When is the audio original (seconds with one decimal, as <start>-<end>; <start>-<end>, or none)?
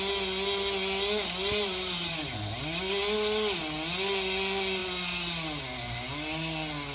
0.0-1.4; 2.4-6.9